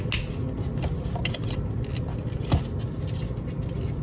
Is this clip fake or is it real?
real